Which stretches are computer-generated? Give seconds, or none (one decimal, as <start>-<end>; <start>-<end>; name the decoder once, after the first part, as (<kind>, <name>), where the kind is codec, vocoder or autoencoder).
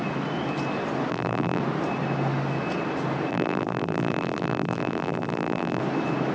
1.1-1.6 (vocoder, BigVGAN v2); 3.3-5.8